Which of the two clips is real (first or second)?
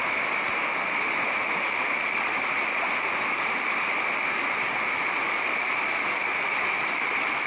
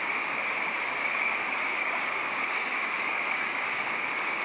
first